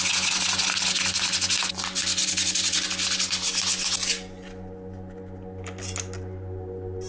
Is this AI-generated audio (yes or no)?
no